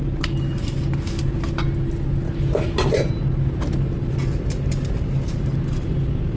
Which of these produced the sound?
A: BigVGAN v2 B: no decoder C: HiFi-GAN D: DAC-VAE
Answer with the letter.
B